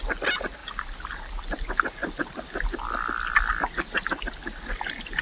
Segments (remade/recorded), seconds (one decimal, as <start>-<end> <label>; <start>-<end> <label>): 0.0-0.6 recorded; 0.6-1.4 remade; 1.4-2.0 recorded; 2.0-5.2 remade